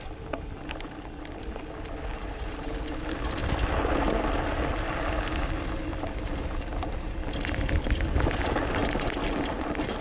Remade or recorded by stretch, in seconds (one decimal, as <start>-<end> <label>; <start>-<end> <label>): 0.0-2.2 recorded; 2.2-2.7 remade; 2.7-10.0 recorded